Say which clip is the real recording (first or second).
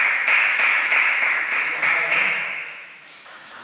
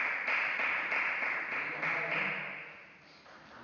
second